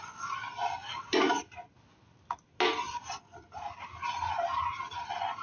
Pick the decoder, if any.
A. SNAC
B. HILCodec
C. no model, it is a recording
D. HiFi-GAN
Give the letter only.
C